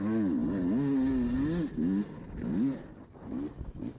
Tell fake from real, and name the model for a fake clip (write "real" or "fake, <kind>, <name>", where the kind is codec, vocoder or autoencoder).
real